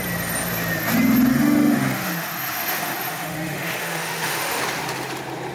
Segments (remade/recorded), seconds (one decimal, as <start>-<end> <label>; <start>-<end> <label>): 0.0-1.3 recorded; 1.3-4.6 remade; 4.6-5.5 recorded

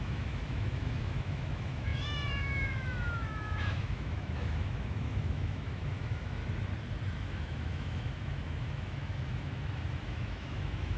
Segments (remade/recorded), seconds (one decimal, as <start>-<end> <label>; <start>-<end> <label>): 0.0-6.4 remade; 6.4-7.1 recorded; 7.1-11.0 remade

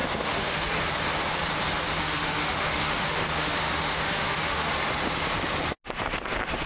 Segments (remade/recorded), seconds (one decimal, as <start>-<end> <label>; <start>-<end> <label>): 0.0-0.6 remade; 0.6-2.0 recorded; 2.0-4.7 remade; 4.7-6.7 recorded

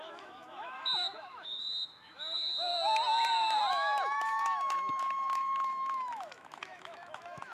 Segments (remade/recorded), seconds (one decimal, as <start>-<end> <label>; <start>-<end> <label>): 0.0-2.7 remade; 2.7-3.7 recorded; 3.7-7.5 remade

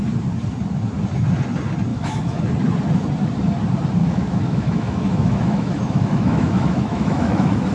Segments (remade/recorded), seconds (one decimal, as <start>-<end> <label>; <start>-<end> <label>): 0.0-1.9 recorded; 1.9-2.4 remade; 2.4-4.0 recorded; 4.0-7.7 remade

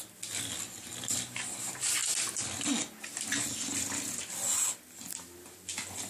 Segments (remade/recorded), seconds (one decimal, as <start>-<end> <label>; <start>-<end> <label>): 0.0-6.1 recorded